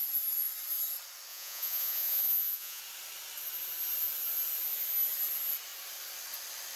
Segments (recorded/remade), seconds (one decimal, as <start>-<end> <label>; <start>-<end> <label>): 0.0-1.3 recorded; 1.3-2.8 remade; 2.8-6.8 recorded